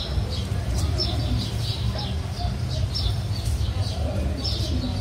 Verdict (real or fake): real